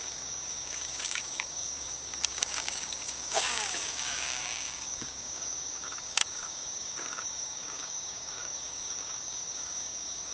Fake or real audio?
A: fake